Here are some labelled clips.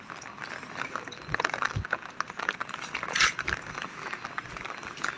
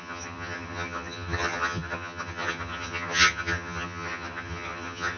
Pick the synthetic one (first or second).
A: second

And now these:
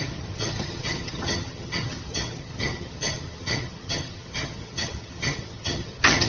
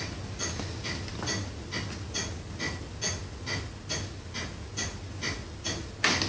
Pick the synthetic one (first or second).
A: first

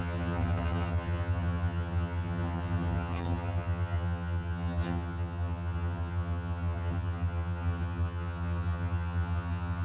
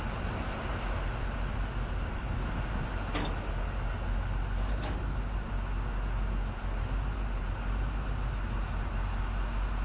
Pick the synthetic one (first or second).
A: first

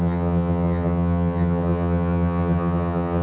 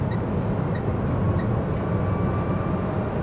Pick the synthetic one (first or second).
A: first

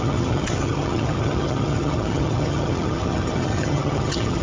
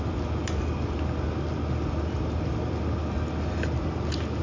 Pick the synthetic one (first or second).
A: first